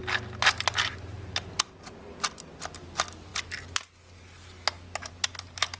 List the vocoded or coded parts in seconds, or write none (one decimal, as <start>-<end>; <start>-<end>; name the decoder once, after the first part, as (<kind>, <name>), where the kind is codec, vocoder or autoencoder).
none